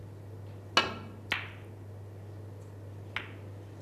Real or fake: real